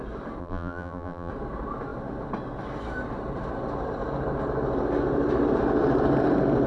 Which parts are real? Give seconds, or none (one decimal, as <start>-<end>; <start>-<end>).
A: 0.0-0.4; 1.3-6.7